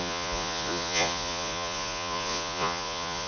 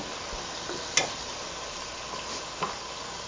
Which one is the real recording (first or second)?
second